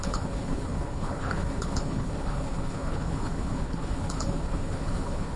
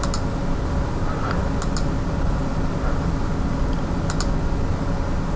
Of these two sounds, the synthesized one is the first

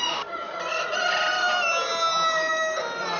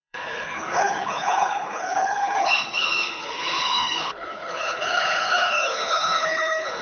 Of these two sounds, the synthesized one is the second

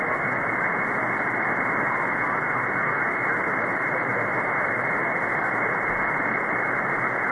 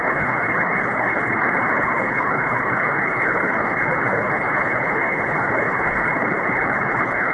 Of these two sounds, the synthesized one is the second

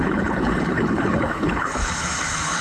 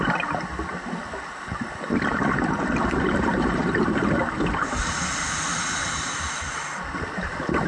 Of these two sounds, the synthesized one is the first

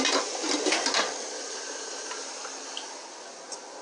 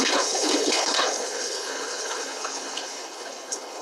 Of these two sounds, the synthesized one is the second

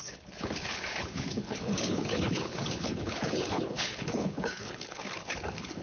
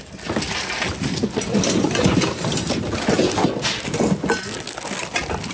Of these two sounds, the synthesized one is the first